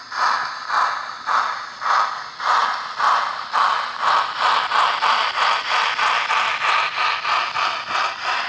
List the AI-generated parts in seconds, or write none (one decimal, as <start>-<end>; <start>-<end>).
none